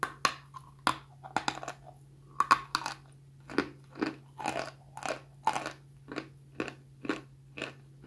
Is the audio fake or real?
real